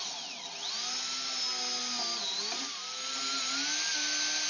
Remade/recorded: recorded